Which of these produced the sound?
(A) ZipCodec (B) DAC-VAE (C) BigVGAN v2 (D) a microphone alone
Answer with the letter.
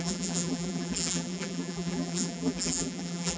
C